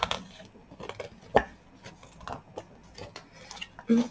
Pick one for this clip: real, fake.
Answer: real